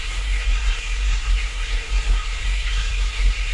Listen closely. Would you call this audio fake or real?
fake